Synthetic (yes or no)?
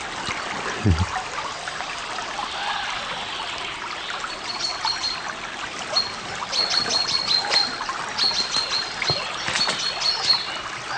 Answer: no